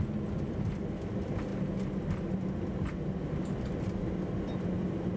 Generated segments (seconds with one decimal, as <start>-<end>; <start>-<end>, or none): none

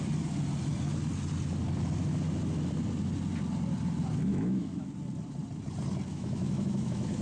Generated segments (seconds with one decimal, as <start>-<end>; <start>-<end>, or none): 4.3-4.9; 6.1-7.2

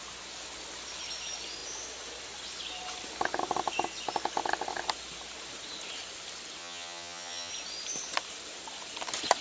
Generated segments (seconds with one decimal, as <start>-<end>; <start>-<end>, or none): 6.6-7.5

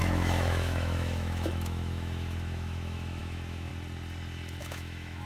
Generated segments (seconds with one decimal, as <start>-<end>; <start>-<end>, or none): 0.0-3.7; 4.6-5.3

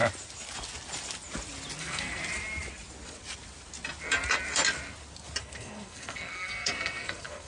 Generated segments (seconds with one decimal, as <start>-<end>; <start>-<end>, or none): 1.8-2.2; 5.4-7.5

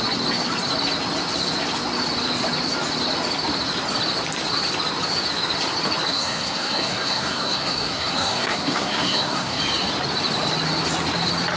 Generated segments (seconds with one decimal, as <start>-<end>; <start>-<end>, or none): 6.1-9.6

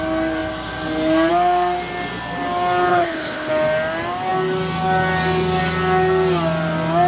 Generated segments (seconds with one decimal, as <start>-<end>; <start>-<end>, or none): 2.9-3.5